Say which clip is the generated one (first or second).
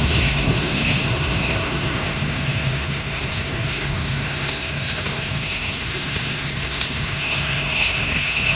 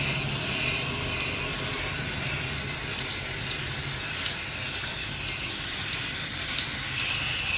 first